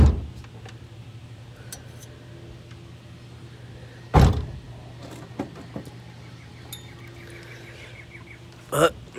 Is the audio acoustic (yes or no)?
yes